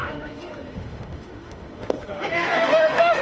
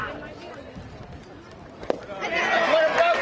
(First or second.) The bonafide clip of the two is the second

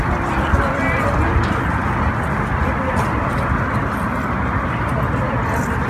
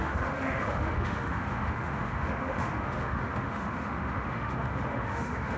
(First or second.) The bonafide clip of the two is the first